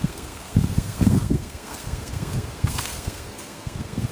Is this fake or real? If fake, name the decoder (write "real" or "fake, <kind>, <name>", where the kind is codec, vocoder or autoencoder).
fake, codec, SNAC